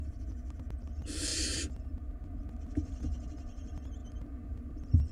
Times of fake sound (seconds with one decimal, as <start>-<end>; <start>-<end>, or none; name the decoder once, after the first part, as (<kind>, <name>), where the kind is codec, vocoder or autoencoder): 1.3-1.8 (vocoder, BigVGAN v2); 4.0-5.1